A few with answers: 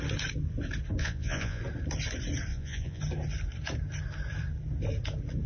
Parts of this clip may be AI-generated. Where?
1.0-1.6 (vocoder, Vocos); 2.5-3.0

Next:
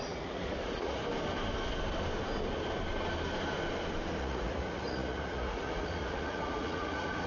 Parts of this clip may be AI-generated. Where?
0.0-1.0 (vocoder, Vocos); 4.2-7.3

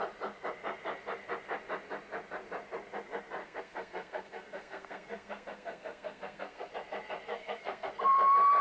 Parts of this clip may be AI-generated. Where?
3.4-6.7 (codec, SNAC); 7.3-7.9